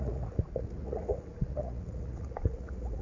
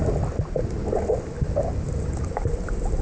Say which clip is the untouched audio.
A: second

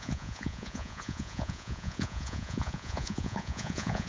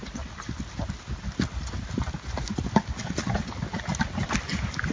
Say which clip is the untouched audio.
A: second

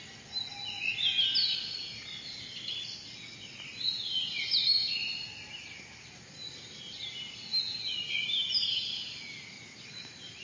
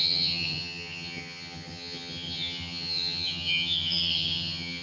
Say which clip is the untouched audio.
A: first